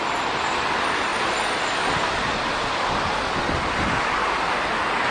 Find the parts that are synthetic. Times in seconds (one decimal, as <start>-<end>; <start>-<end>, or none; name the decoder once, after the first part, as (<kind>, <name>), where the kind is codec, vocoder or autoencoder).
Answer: none